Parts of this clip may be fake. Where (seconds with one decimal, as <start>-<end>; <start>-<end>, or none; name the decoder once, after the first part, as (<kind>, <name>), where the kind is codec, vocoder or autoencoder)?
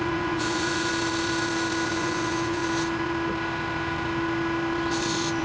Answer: 0.0-0.9 (vocoder, Vocos); 1.9-2.6